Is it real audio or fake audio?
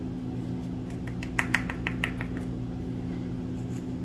real